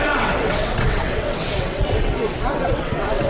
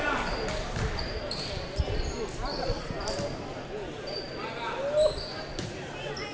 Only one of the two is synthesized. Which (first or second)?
first